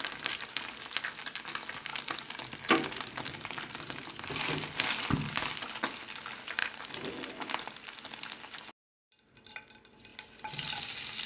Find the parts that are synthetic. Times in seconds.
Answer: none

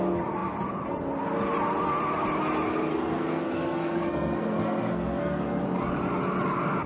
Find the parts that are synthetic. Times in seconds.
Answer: 2.9-5.6

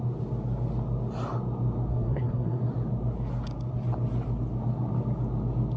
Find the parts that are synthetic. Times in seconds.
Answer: 1.9-2.6